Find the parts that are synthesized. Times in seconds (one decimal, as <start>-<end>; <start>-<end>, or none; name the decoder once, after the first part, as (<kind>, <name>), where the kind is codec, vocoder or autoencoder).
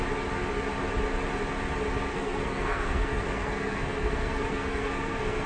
2.1-5.5 (codec, SNAC)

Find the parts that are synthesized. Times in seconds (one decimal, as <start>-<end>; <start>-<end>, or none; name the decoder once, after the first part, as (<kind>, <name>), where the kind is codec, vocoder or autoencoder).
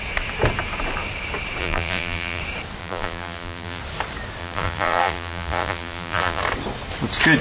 1.6-2.4 (vocoder, BigVGAN v2); 2.8-3.8; 4.4-6.4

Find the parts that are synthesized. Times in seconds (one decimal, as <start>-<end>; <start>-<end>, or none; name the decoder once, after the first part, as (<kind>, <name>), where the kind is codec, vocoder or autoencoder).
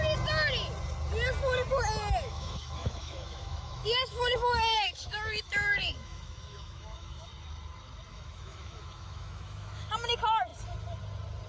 2.2-7.3 (autoencoder, DAC-VAE); 8.1-9.9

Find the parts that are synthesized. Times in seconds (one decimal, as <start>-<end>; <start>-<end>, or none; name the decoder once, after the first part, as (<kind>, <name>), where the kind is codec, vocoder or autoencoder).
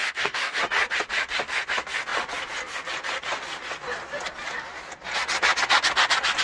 0.0-0.6 (codec, DAC)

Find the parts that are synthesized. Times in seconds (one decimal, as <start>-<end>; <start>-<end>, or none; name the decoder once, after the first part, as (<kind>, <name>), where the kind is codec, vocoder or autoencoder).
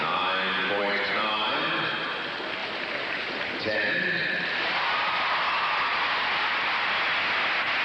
0.6-1.3 (vocoder, BigVGAN v2); 2.6-6.9